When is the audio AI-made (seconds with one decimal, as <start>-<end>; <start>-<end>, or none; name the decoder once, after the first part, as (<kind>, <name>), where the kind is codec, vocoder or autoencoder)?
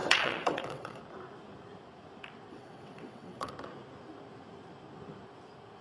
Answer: 0.0-1.0 (vocoder, WaveNeXt); 2.5-3.5